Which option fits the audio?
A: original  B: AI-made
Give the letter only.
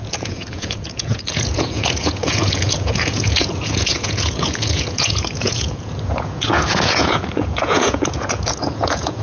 B